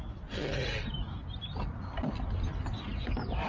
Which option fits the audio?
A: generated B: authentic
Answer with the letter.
B